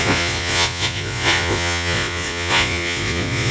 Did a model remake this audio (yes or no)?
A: yes